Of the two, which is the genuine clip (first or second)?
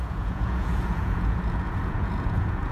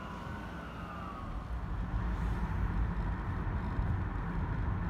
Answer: second